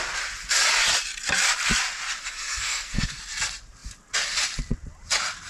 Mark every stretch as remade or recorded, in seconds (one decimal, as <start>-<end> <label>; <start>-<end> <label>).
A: 0.0-2.2 recorded; 2.2-3.2 remade; 3.2-5.5 recorded